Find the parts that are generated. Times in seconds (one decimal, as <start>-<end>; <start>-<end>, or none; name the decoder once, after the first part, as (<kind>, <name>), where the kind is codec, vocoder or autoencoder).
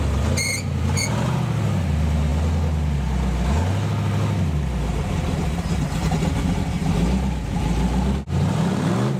none